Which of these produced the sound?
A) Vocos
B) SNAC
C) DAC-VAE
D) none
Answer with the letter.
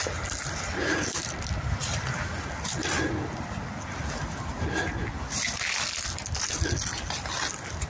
D